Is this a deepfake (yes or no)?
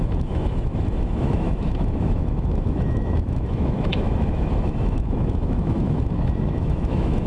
yes